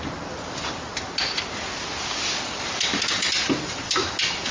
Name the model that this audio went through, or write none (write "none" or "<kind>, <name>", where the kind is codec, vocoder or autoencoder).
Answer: none